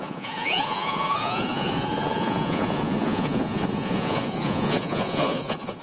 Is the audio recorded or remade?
remade